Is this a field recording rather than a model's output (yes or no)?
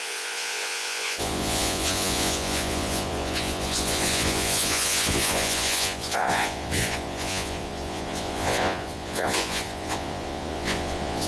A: no